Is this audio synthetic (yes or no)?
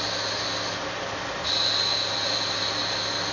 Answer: no